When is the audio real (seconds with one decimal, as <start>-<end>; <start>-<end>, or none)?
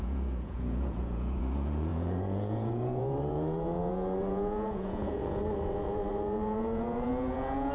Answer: none